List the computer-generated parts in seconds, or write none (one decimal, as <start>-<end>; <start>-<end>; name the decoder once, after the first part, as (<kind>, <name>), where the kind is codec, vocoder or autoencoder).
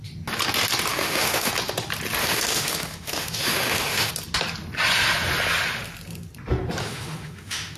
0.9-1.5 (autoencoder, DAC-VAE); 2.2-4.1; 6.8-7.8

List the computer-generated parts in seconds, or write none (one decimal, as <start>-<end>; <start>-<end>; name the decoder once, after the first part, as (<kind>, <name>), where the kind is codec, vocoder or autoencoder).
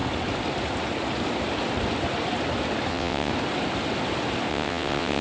2.9-3.3 (vocoder, WaveNeXt); 4.5-5.2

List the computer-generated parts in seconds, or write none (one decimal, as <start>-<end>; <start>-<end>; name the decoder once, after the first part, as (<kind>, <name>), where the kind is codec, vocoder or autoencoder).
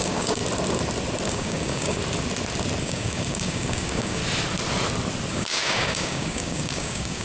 0.0-0.4 (codec, DAC); 1.3-2.0; 2.8-4.2; 5.3-7.2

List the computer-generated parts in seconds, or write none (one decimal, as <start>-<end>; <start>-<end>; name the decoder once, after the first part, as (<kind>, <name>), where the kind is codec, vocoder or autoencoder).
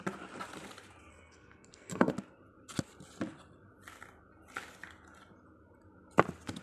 1.1-2.1 (codec, SNAC)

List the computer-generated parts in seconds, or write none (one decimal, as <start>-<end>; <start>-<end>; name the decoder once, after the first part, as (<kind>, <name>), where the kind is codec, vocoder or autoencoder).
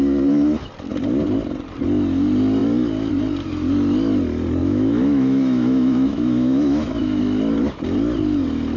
4.6-7.2 (autoencoder, DAC-VAE)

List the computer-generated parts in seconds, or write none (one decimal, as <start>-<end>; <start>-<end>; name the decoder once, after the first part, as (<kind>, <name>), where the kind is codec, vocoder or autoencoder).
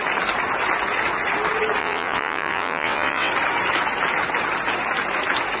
1.8-3.3 (vocoder, WaveNeXt)